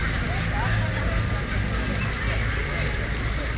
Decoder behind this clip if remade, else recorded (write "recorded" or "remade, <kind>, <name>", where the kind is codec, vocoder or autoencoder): recorded